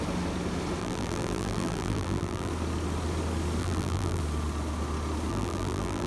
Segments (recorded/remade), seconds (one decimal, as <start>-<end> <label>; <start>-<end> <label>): 0.0-0.8 recorded; 0.8-2.5 remade; 2.5-3.6 recorded; 3.6-4.2 remade; 4.2-5.3 recorded; 5.3-6.1 remade